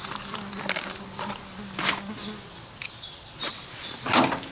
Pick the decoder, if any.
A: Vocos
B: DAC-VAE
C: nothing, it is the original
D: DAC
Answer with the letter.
C